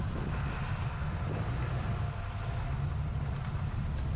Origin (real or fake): real